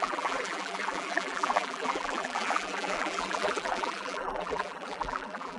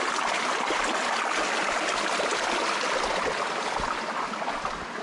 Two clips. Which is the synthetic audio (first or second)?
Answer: first